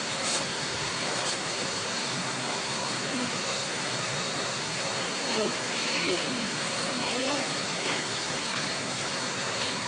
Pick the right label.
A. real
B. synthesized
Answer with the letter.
B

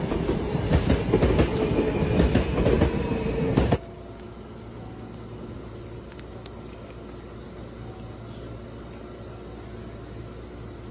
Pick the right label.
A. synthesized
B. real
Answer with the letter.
B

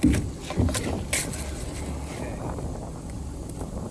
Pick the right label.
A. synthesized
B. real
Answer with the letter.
B